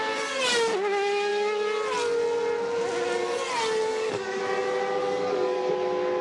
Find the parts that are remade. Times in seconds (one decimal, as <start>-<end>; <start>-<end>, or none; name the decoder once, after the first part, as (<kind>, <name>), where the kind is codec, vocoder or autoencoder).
3.9-4.4 (codec, DAC); 5.0-5.7